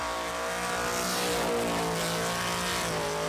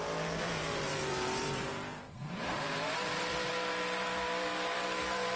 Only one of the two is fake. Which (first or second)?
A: second